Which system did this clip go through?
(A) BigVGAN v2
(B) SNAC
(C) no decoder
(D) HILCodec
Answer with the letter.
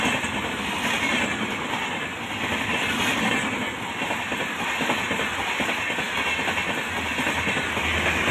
C